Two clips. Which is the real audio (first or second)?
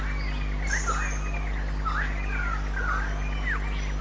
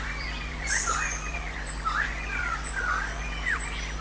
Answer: first